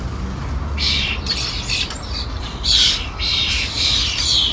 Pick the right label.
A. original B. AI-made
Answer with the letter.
A